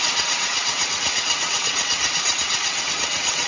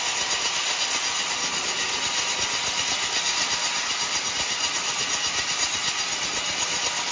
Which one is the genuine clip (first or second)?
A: second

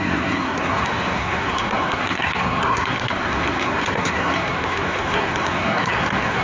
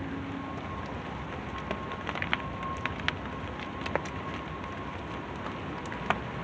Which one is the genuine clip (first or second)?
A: second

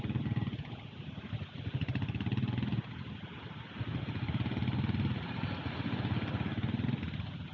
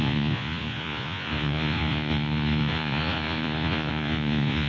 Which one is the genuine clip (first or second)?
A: first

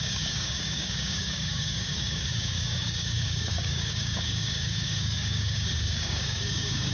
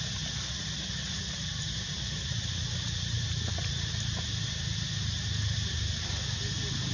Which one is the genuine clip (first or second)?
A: second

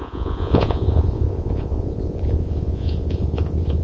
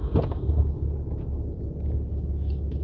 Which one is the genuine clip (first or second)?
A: second